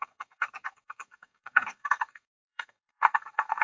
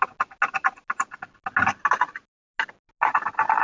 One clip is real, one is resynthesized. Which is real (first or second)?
second